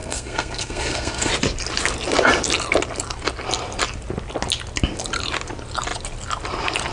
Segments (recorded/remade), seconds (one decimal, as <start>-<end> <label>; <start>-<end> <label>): 0.0-1.3 remade; 1.3-6.9 recorded